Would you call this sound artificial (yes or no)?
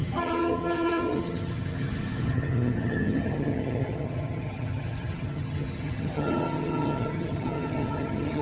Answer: yes